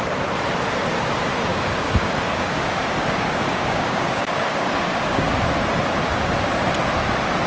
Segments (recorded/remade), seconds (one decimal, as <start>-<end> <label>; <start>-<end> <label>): 0.0-1.5 recorded; 1.5-5.5 remade; 5.5-7.5 recorded